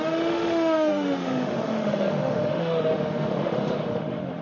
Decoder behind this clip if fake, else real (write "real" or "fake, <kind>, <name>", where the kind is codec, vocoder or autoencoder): fake, autoencoder, DAC-VAE